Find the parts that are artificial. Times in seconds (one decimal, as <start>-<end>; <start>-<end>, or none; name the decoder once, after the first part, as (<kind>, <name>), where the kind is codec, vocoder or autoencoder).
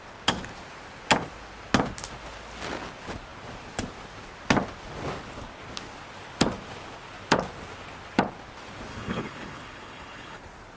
8.9-10.4 (codec, HILCodec)